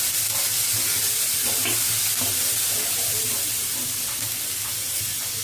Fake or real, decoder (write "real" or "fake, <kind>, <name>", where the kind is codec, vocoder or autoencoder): real